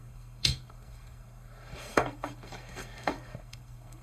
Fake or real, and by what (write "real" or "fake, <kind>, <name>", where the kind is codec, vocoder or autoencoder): fake, codec, SNAC